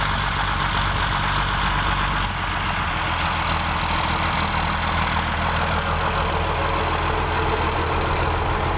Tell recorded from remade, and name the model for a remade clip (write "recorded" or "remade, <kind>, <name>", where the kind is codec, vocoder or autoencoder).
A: recorded